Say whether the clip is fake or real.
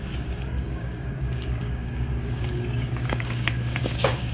fake